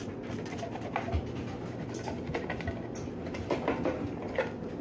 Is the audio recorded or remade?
recorded